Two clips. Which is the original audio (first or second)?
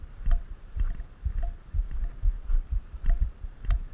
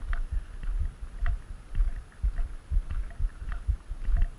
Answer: second